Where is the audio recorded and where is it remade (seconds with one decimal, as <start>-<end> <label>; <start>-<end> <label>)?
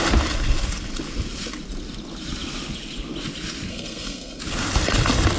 0.0-3.7 recorded; 3.7-4.4 remade; 4.4-5.4 recorded